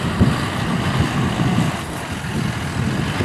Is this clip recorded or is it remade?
recorded